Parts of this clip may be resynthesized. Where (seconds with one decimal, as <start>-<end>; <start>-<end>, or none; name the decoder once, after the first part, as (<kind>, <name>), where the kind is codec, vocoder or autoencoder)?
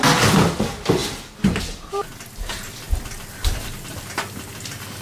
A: none